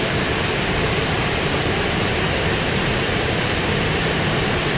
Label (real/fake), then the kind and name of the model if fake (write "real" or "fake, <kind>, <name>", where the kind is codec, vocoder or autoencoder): fake, vocoder, BigVGAN v2